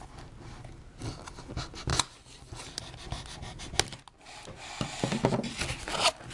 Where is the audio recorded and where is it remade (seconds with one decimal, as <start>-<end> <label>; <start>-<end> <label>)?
0.0-1.9 recorded; 1.9-2.6 remade; 2.6-6.3 recorded